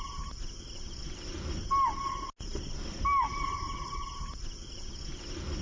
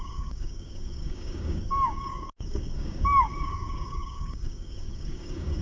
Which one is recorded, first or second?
first